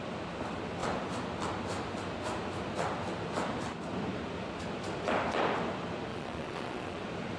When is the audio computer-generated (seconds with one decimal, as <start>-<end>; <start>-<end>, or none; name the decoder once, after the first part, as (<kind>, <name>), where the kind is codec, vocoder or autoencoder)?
6.1-7.0 (vocoder, Vocos)